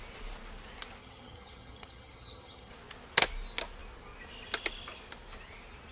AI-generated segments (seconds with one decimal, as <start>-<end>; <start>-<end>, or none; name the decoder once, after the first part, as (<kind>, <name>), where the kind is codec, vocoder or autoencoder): 1.0-2.7 (vocoder, HiFi-GAN)